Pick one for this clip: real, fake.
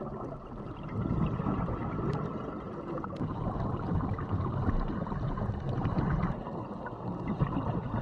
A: real